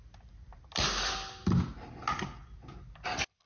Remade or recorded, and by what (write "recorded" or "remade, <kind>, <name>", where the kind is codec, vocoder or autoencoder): recorded